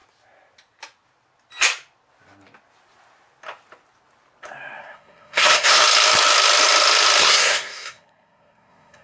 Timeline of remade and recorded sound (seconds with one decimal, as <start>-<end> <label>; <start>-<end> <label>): 0.0-4.8 recorded; 4.8-5.8 remade; 5.8-7.2 recorded; 7.2-9.0 remade